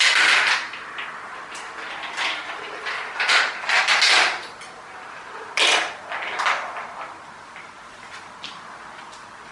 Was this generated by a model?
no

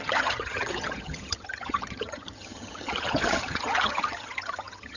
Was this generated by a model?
yes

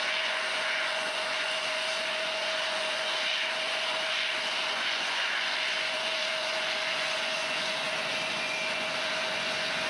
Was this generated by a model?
yes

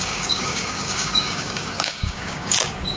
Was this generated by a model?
yes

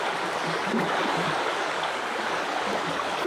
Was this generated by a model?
yes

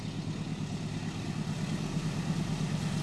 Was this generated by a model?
no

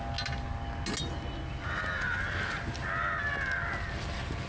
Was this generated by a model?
no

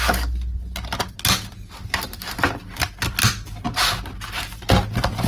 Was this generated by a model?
no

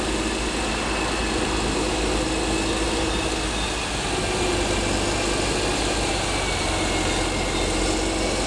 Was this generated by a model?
no